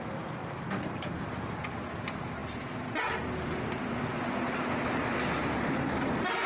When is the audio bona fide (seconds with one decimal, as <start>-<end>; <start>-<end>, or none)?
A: 0.0-0.4; 1.1-6.5